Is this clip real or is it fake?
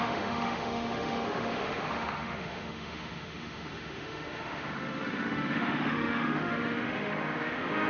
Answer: fake